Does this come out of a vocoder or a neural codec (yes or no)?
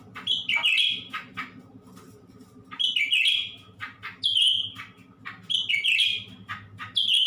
no